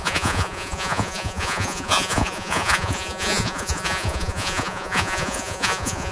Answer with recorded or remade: remade